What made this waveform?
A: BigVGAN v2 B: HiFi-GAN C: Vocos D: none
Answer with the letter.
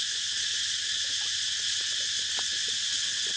D